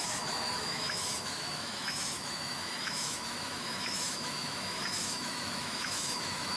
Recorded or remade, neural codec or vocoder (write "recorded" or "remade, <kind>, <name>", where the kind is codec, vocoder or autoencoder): remade, autoencoder, DAC-VAE